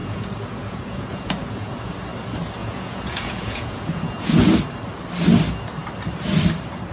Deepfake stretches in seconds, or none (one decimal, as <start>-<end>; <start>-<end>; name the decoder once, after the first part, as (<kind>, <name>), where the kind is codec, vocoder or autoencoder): 0.0-1.9 (vocoder, Vocos); 2.6-4.5